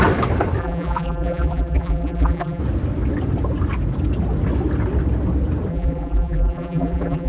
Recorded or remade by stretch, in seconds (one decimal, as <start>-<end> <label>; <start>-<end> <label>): 0.0-0.6 recorded; 0.6-2.6 remade; 2.6-5.7 recorded; 5.7-7.3 remade